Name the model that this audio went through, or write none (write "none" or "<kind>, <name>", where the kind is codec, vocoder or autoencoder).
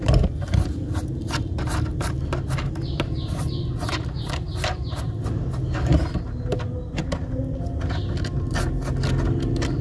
none